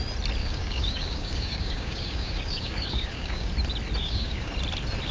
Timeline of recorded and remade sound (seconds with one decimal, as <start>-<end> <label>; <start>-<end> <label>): 0.0-0.4 recorded; 0.4-3.5 remade; 3.5-4.0 recorded; 4.0-4.5 remade; 4.5-5.1 recorded